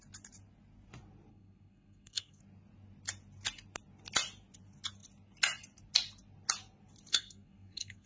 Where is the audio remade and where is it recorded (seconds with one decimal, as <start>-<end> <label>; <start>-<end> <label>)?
0.0-1.3 recorded; 1.3-2.4 remade; 2.4-7.1 recorded; 7.1-8.1 remade